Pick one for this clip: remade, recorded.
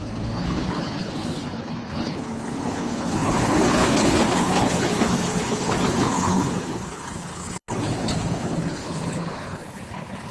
remade